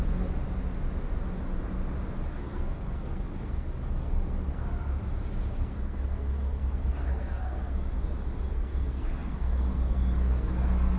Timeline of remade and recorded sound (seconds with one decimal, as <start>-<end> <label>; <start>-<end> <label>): 0.0-2.3 recorded; 2.3-4.7 remade; 4.7-5.5 recorded; 5.5-7.9 remade; 7.9-8.5 recorded; 8.5-11.0 remade